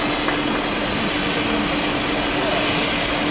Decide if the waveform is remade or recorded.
recorded